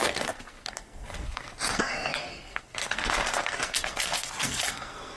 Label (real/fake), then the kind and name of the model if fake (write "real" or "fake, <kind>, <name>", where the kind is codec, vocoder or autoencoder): fake, codec, SNAC